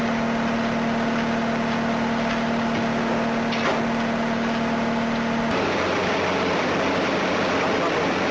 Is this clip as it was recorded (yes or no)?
yes